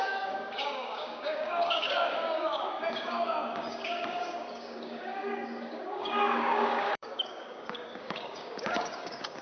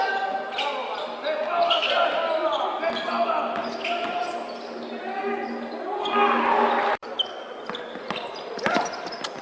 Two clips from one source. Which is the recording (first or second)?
second